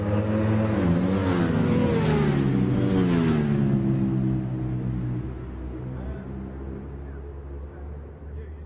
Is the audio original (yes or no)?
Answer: yes